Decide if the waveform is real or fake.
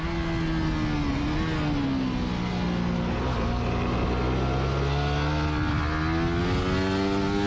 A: real